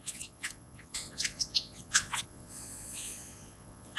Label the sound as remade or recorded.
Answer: remade